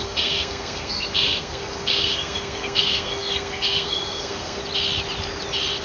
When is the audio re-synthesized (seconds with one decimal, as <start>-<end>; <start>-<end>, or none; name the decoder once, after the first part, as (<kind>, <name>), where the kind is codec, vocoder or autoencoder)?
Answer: 0.0-4.6 (codec, SNAC)